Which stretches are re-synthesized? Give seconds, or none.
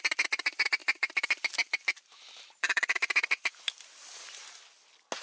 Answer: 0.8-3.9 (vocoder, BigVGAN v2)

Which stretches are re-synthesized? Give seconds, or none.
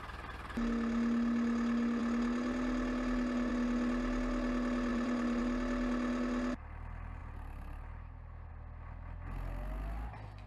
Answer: 4.9-5.4 (vocoder, BigVGAN v2)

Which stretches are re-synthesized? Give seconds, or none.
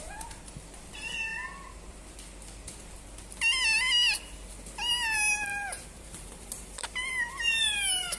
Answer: 5.5-8.2 (vocoder, BigVGAN v2)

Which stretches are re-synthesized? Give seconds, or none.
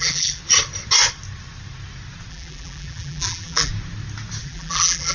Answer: 0.0-0.4 (vocoder, BigVGAN v2); 2.3-3.7; 4.4-5.1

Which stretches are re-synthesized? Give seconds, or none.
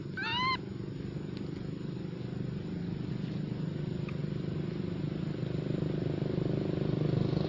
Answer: none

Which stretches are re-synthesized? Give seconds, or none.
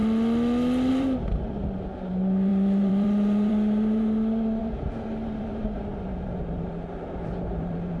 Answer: 0.9-1.6 (vocoder, BigVGAN v2); 2.1-8.0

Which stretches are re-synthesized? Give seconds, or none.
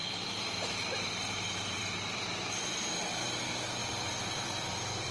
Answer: 0.0-3.1 (vocoder, BigVGAN v2); 3.8-5.1